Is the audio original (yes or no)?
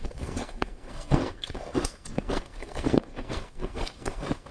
no